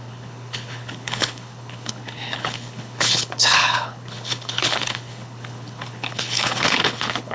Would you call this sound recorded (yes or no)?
no